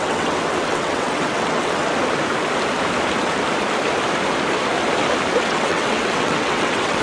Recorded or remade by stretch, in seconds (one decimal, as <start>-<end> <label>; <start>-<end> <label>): 0.0-1.8 remade; 1.8-5.4 recorded; 5.4-7.0 remade